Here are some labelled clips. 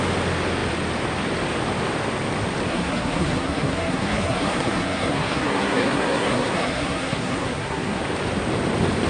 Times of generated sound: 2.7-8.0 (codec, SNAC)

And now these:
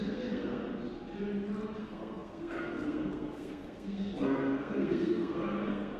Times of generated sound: 0.0-0.6 (codec, SNAC); 1.8-6.0